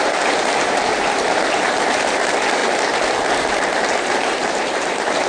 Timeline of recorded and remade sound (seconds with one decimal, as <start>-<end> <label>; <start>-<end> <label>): 0.0-2.6 remade; 2.6-3.3 recorded; 3.3-5.3 remade